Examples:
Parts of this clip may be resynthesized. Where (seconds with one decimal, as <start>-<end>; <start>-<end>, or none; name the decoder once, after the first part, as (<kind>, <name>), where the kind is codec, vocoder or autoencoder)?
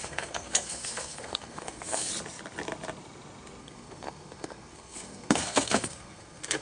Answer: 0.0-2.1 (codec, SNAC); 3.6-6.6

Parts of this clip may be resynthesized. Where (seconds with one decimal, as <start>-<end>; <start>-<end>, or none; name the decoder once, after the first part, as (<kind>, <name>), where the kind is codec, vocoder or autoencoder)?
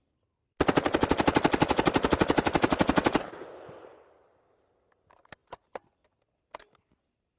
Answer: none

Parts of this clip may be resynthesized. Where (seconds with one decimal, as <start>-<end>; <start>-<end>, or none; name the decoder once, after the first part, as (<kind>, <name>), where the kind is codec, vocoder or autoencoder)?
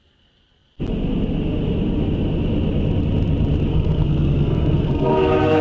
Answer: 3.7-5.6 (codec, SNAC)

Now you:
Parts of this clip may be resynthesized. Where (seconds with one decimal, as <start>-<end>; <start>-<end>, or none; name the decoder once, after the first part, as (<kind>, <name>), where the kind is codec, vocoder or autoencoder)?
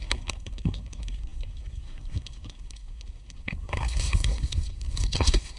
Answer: 0.0-5.6 (codec, SNAC)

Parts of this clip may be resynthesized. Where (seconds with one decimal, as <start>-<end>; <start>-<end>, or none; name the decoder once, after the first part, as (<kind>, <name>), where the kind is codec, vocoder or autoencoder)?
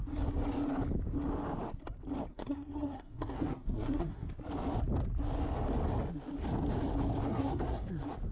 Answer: 2.3-4.3 (codec, SNAC); 7.3-7.9